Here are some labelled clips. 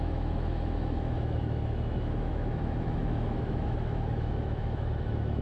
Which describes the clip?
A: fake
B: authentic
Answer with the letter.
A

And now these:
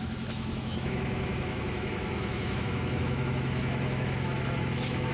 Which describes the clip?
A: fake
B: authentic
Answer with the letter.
A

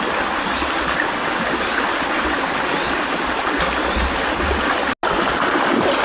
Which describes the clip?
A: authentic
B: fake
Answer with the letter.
A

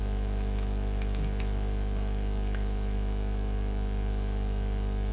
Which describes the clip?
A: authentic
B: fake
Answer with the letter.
B